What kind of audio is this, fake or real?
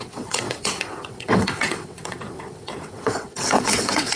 fake